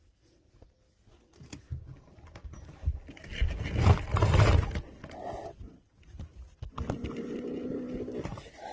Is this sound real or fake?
real